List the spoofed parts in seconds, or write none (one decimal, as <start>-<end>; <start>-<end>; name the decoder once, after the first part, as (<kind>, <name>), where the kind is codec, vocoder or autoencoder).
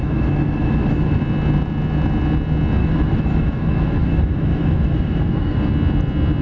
0.0-1.2 (autoencoder, DAC-VAE); 2.8-5.6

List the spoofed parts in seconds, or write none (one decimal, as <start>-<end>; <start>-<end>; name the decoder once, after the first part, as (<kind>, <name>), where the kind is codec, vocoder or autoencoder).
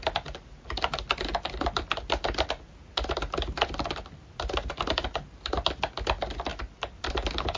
none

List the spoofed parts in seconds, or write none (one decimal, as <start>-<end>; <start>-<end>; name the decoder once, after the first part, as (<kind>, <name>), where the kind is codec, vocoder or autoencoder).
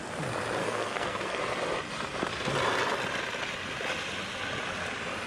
0.6-1.4 (codec, SNAC)